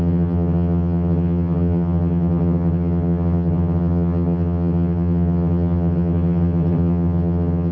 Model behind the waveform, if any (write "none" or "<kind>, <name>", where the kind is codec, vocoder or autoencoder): vocoder, HiFi-GAN